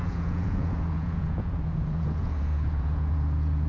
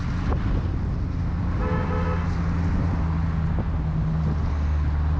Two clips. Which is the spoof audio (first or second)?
first